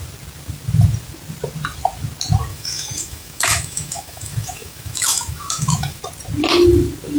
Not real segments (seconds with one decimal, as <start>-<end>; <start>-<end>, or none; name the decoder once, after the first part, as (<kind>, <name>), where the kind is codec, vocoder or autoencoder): 2.5-6.0 (autoencoder, DAC-VAE)